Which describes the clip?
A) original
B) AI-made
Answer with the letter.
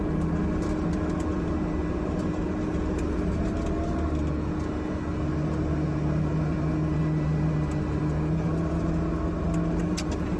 A